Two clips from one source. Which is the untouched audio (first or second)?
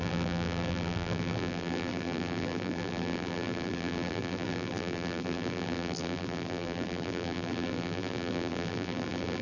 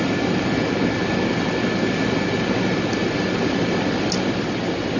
second